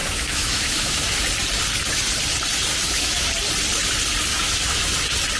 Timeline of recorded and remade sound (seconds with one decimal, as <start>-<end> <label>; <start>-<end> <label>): 0.0-1.2 remade; 1.2-2.7 recorded; 2.7-3.3 remade; 3.3-4.3 recorded; 4.3-4.9 remade; 4.9-5.4 recorded